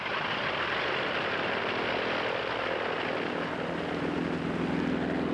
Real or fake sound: real